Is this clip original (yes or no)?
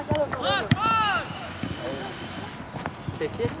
yes